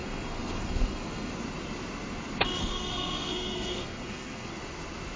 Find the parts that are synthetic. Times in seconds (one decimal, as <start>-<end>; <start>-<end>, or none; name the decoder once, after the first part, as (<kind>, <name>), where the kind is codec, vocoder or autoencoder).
0.0-1.3 (codec, SNAC); 2.6-4.5